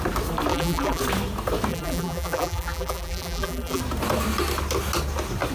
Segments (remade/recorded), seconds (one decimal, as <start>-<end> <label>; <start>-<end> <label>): 0.0-0.5 recorded; 0.5-1.0 remade; 1.0-1.7 recorded; 1.7-3.8 remade; 3.8-5.5 recorded